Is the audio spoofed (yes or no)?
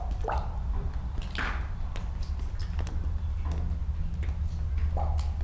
no